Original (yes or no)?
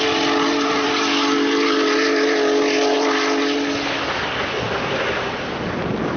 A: yes